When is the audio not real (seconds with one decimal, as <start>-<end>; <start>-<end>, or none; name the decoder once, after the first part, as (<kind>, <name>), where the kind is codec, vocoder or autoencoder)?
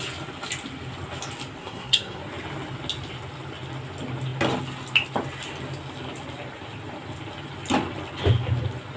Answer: 1.6-2.2 (codec, SNAC)